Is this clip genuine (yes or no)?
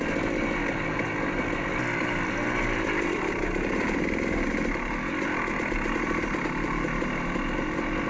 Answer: yes